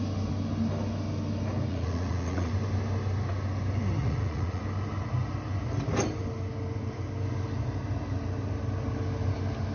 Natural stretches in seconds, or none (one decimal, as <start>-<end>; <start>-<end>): 0.0-1.7; 2.5-4.0; 4.6-9.7